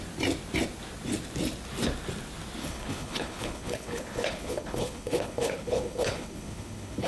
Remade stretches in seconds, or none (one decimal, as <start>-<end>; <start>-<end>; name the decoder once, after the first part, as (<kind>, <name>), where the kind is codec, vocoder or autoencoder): 2.6-7.1 (codec, HILCodec)